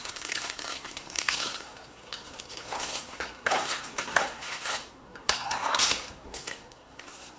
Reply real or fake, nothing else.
fake